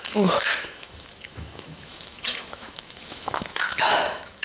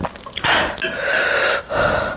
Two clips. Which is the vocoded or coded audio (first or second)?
first